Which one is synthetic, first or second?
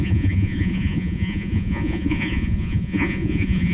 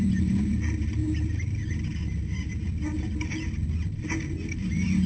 first